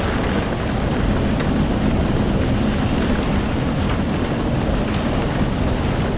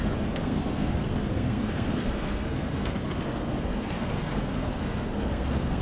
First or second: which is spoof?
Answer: second